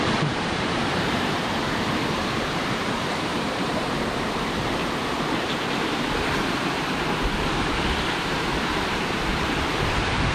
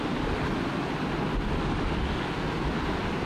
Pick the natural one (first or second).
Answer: second